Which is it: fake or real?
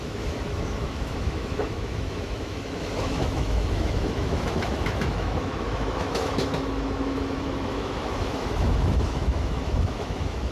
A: fake